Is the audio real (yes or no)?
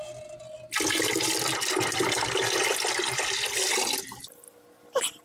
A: yes